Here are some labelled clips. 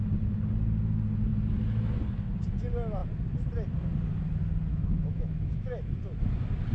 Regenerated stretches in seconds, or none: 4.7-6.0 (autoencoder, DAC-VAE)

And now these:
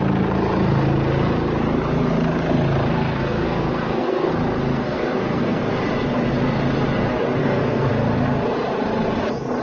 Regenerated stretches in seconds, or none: 2.9-4.3 (codec, SNAC); 4.7-5.6; 7.4-7.9

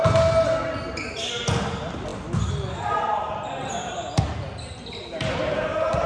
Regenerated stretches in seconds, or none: none

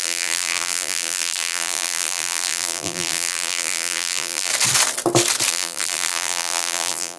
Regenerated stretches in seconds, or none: 0.0-4.5 (vocoder, BigVGAN v2); 5.5-7.2

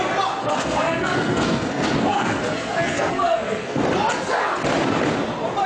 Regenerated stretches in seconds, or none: 0.4-3.8 (codec, SNAC)

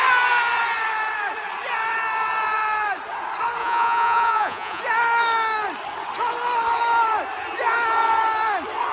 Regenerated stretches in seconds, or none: 3.6-4.8 (vocoder, Vocos)

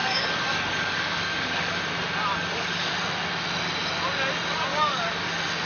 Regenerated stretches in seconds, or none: 0.0-1.8 (codec, DAC); 2.3-2.9; 4.7-5.3